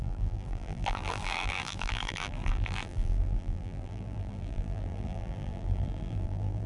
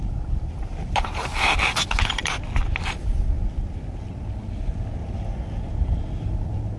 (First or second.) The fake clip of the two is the first